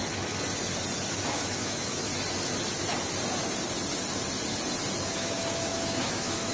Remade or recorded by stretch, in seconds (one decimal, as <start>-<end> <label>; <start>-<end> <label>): 0.0-1.2 recorded; 1.2-2.1 remade; 2.1-5.0 recorded; 5.0-6.5 remade

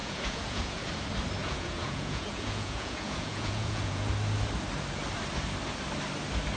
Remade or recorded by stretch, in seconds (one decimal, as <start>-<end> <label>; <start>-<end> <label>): 0.0-0.9 remade; 0.9-1.4 recorded; 1.4-4.1 remade; 4.1-6.6 recorded